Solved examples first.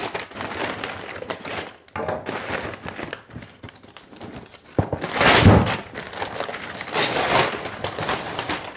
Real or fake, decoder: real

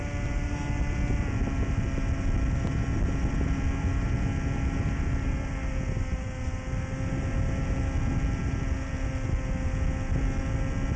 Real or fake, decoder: real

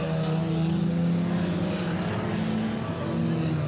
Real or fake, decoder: real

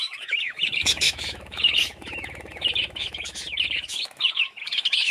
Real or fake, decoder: fake, autoencoder, DAC-VAE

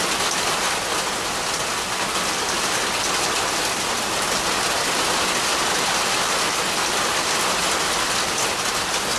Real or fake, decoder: real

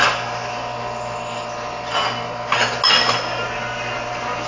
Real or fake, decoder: real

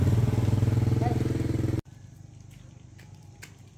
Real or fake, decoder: real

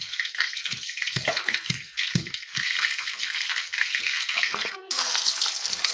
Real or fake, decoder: fake, codec, SNAC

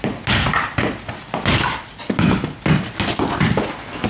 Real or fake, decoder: real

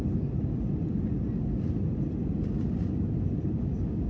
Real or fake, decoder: real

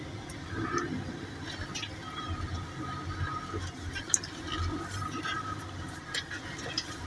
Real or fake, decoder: real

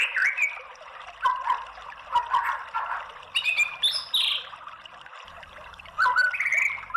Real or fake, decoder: real